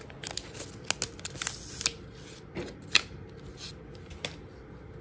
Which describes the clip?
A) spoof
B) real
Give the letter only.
B